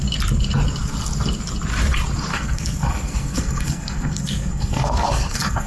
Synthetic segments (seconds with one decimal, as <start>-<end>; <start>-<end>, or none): 2.3-5.7